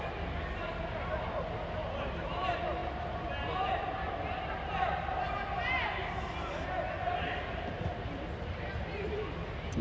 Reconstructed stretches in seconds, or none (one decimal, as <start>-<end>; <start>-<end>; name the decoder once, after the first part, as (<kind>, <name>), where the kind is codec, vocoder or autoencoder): none